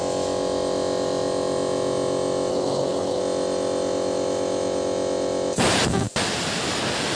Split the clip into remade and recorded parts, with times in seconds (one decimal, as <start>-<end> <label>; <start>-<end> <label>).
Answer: 0.0-2.5 recorded; 2.5-3.2 remade; 3.2-7.2 recorded